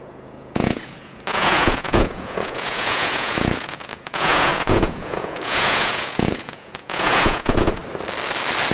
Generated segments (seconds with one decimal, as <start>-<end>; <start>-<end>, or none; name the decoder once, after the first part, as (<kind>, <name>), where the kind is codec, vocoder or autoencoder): 0.0-7.8 (vocoder, Vocos)